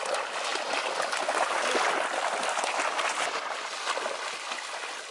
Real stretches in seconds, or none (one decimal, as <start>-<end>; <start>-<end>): 0.0-5.1

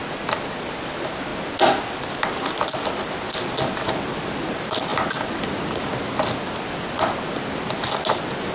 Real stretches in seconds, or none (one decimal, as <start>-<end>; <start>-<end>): 0.0-8.5